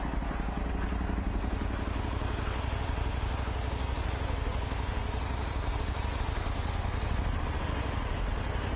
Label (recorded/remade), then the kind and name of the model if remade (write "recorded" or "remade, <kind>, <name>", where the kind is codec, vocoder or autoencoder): recorded